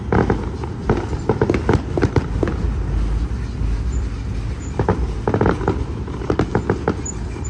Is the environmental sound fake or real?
real